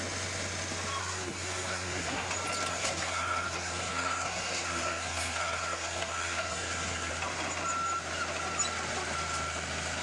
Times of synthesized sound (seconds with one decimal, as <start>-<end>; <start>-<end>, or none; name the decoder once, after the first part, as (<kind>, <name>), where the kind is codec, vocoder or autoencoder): 1.0-2.3 (codec, SNAC); 2.7-7.1